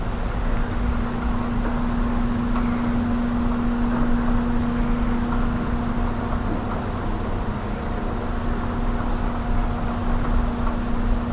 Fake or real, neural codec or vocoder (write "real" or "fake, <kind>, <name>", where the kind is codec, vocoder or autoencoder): real